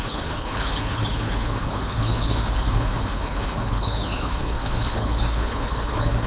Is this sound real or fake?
fake